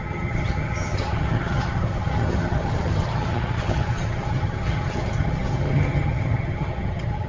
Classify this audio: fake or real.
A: fake